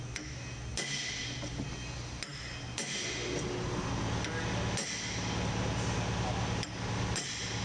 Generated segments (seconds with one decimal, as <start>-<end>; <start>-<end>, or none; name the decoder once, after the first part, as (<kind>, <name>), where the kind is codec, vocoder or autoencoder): none